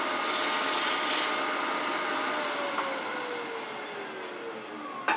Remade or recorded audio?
recorded